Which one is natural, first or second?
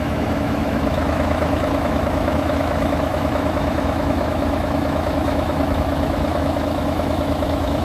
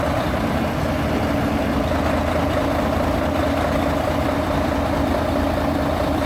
second